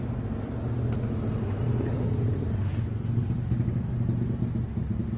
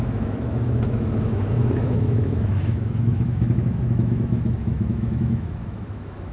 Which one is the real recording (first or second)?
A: first